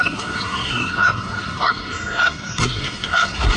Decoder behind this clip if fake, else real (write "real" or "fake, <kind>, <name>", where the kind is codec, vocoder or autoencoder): fake, codec, SNAC